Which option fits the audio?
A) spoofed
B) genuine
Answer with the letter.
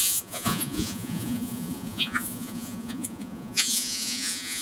A